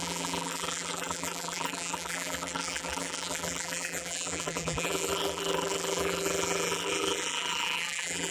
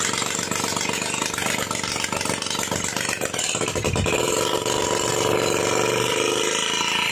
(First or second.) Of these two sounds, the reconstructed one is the first